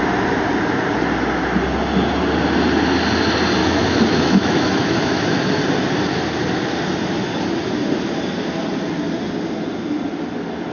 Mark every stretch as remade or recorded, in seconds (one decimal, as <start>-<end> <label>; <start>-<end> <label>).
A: 0.0-3.6 recorded; 3.6-5.2 remade; 5.2-10.7 recorded